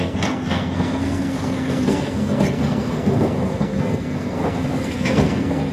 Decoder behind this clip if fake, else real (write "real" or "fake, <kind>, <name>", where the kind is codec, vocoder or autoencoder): fake, codec, SNAC